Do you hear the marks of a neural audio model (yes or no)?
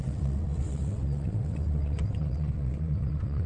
yes